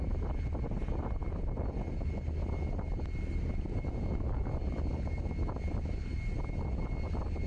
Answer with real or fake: real